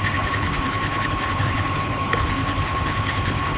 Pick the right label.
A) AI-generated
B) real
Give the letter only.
A